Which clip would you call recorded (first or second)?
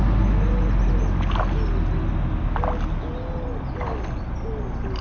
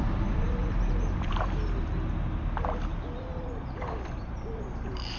first